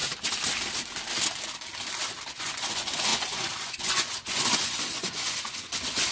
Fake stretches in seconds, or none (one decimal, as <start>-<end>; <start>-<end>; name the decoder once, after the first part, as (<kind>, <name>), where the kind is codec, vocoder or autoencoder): 2.3-6.1 (vocoder, Vocos)